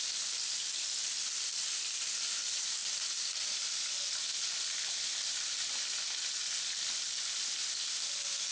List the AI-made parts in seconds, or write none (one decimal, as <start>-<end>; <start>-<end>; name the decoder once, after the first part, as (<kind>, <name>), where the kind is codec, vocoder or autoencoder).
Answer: none